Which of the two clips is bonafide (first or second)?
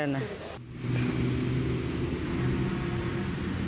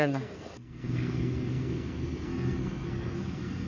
first